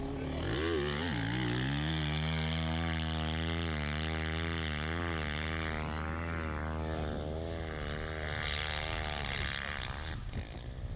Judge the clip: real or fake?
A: real